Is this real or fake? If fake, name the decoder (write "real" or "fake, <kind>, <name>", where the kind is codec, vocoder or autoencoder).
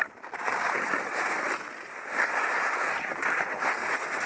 real